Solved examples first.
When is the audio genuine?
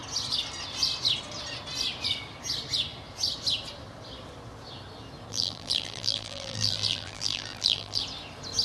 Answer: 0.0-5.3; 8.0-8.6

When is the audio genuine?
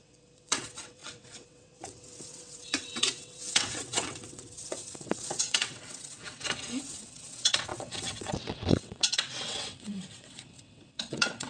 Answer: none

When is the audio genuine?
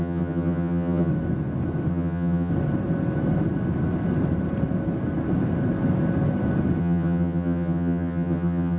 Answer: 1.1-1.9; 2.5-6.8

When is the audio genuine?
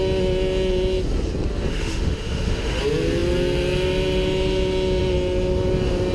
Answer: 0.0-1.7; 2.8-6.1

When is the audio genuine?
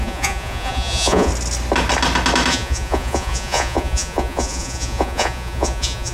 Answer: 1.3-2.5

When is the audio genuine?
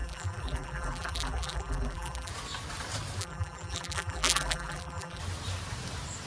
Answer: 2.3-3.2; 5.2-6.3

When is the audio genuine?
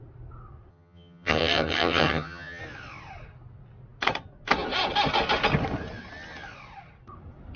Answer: 0.0-0.7; 2.6-7.6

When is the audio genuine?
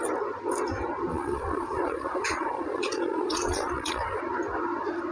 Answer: 0.0-1.1; 4.2-5.1